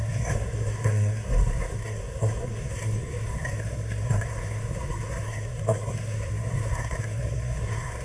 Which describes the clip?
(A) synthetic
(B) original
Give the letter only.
A